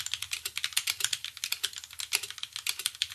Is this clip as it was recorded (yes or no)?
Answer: yes